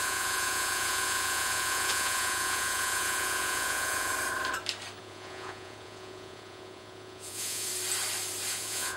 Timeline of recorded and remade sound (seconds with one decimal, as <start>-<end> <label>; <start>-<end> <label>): 0.0-4.1 remade; 4.1-5.0 recorded; 5.0-7.7 remade; 7.7-8.5 recorded; 8.5-9.0 remade